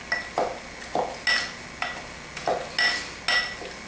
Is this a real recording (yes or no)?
yes